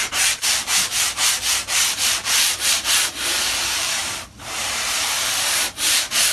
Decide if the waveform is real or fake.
fake